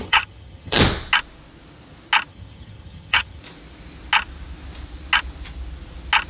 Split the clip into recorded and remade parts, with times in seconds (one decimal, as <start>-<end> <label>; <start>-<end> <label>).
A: 0.0-0.8 remade; 0.8-2.3 recorded; 2.3-3.4 remade; 3.4-6.3 recorded